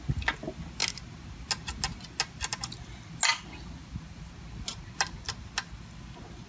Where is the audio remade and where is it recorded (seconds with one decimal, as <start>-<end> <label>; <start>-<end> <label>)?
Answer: 0.0-6.5 recorded